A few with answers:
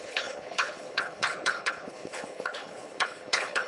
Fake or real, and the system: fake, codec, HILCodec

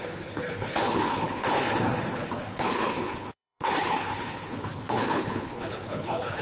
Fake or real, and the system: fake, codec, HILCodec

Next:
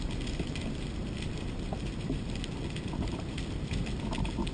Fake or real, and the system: real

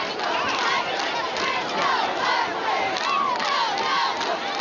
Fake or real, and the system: real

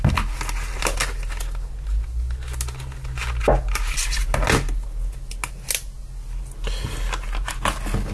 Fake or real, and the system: real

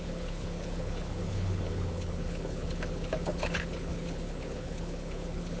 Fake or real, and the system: fake, codec, HILCodec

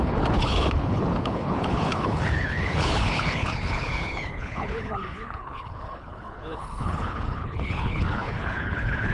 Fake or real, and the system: fake, codec, HILCodec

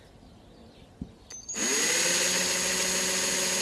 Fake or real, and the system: real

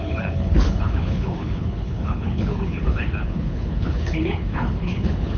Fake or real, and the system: fake, codec, HILCodec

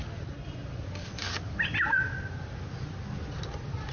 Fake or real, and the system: real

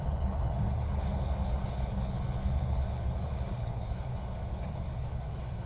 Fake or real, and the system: fake, codec, HILCodec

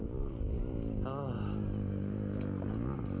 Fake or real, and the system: real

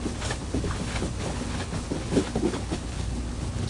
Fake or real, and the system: fake, codec, HILCodec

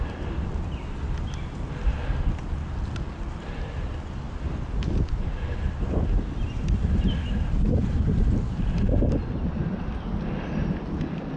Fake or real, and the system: real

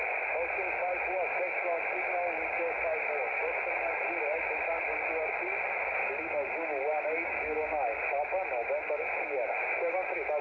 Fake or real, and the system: real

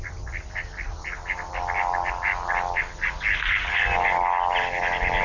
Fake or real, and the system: real